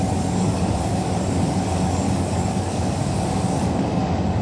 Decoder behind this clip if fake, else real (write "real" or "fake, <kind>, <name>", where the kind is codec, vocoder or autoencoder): fake, codec, DAC